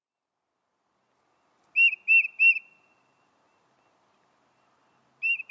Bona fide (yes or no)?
yes